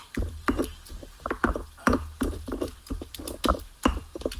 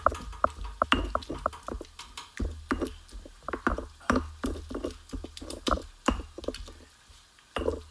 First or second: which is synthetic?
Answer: first